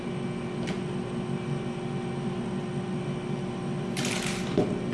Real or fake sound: real